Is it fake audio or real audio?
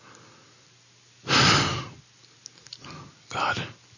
real